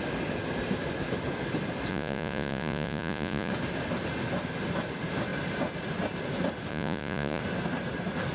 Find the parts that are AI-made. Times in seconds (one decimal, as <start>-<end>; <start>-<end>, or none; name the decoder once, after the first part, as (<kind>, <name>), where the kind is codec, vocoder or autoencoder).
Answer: 1.9-3.5 (vocoder, Vocos); 6.7-7.4